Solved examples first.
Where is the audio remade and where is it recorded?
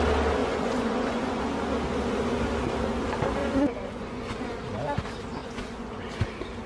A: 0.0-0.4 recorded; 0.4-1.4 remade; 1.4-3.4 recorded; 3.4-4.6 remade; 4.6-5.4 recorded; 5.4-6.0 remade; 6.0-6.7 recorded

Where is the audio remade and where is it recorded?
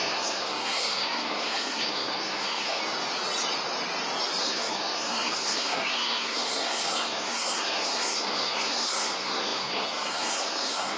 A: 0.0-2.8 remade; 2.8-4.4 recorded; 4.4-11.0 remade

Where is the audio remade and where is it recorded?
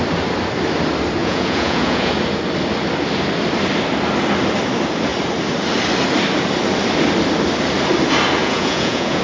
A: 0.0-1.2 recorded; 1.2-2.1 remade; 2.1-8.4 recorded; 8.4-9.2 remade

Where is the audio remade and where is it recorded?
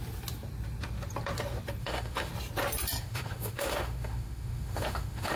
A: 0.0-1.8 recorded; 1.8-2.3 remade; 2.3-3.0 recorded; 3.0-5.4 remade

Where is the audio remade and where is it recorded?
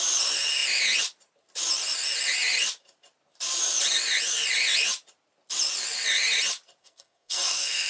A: 0.0-6.8 recorded; 6.8-7.9 remade